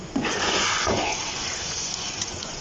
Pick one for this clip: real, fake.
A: fake